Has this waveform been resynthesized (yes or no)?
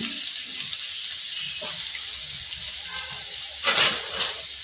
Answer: no